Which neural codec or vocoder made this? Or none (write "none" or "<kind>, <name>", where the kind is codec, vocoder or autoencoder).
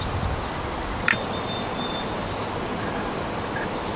none